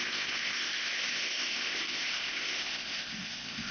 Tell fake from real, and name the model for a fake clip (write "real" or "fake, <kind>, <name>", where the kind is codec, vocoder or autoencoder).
fake, codec, ZipCodec